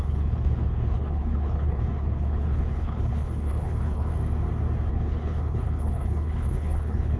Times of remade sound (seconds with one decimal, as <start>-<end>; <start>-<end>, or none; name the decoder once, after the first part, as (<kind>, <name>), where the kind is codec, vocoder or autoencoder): 0.0-4.1 (codec, HILCodec); 4.9-7.2